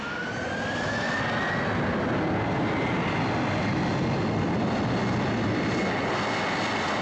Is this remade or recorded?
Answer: recorded